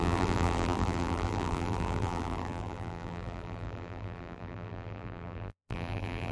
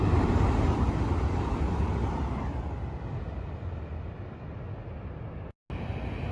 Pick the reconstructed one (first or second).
first